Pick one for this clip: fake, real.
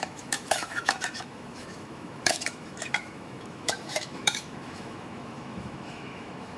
fake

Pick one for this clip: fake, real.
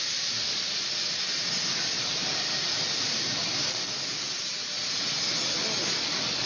real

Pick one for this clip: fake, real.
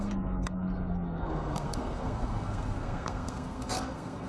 fake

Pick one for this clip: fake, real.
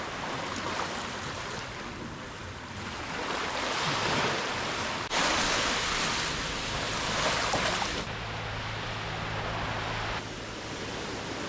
real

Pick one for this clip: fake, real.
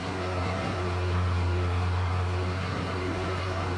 fake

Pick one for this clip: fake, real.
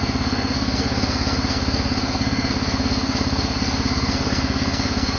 fake